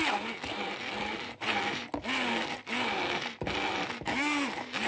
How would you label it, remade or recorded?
recorded